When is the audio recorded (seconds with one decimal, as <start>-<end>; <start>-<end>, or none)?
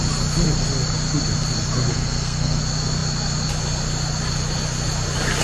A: 0.0-1.9; 2.6-5.4